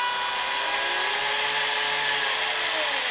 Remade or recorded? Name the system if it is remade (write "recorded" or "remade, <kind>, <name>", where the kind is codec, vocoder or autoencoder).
recorded